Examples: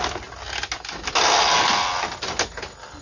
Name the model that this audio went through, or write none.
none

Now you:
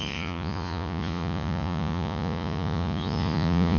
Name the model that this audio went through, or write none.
vocoder, Vocos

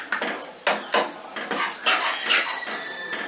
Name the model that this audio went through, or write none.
none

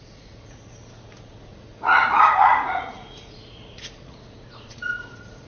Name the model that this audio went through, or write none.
vocoder, Vocos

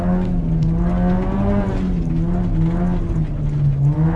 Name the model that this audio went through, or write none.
none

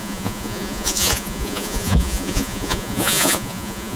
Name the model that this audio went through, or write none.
vocoder, Vocos